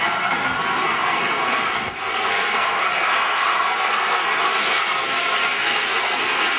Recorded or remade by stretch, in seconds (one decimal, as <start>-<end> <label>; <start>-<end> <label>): 0.0-6.6 remade